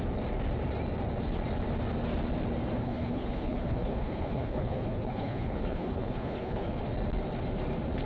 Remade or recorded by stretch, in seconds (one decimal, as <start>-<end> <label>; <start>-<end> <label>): 0.0-2.8 recorded; 2.8-6.8 remade; 6.8-8.1 recorded